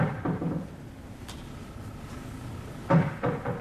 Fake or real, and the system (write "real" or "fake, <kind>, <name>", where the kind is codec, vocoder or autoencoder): real